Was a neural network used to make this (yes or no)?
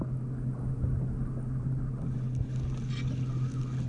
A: no